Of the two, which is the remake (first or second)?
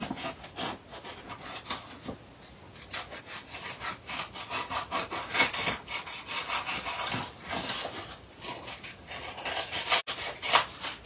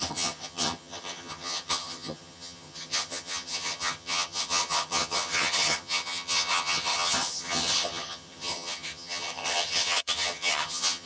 second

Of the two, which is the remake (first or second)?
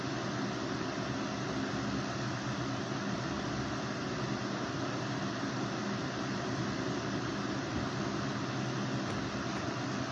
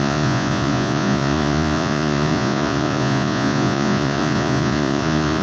second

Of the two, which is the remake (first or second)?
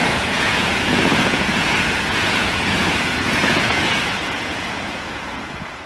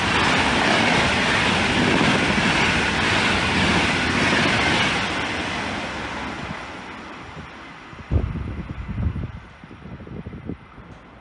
first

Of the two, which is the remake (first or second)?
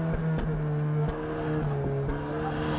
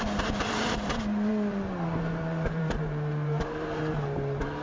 second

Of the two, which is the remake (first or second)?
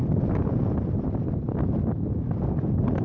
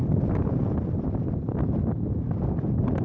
second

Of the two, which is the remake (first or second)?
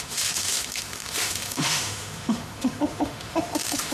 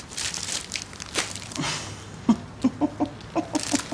first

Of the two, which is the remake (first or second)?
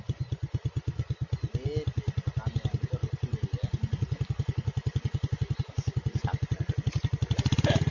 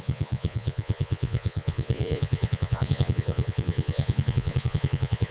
second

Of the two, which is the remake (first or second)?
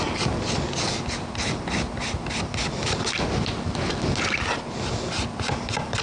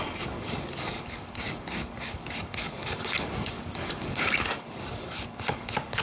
second